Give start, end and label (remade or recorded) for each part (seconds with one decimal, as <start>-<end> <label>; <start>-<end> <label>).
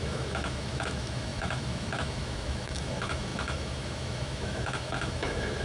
0.0-5.6 remade